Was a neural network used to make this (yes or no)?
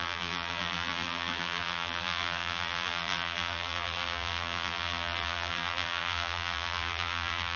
yes